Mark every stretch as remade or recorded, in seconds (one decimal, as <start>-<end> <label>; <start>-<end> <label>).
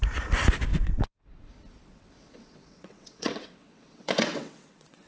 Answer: 0.0-0.7 recorded; 0.7-1.5 remade; 1.5-1.9 recorded; 1.9-5.1 remade